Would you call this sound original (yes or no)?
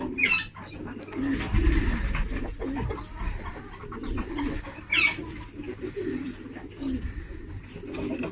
yes